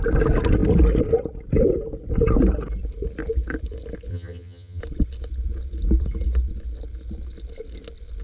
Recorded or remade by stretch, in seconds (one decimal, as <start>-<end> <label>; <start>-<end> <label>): 0.0-4.1 recorded; 4.1-4.8 remade; 4.8-8.2 recorded

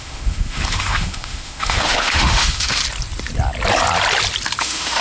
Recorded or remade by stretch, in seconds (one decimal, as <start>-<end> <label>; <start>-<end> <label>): 0.0-2.8 remade; 2.8-4.6 recorded; 4.6-5.0 remade

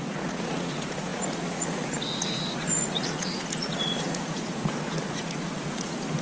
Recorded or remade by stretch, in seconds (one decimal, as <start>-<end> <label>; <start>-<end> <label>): 0.0-6.2 remade

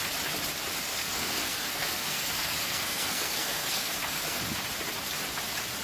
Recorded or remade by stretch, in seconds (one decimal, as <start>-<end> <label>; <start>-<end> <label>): 0.0-0.9 recorded; 0.9-4.4 remade; 4.4-5.8 recorded

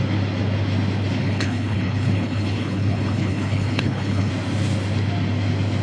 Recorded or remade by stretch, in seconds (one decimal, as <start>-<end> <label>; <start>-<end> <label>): 0.0-1.2 recorded; 1.2-4.3 remade; 4.3-5.8 recorded

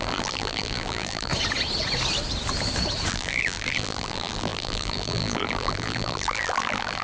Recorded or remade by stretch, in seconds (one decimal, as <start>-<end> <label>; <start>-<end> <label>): 0.0-1.3 remade; 1.3-3.1 recorded; 3.1-7.0 remade

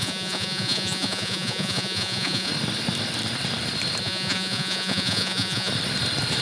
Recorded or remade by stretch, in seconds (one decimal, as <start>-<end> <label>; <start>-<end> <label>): 0.0-2.5 remade; 2.5-4.0 recorded; 4.0-5.7 remade; 5.7-6.4 recorded